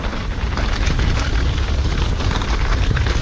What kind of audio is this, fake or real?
real